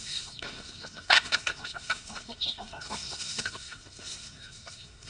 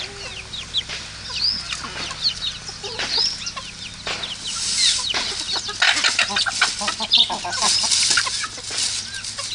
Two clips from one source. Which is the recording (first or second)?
second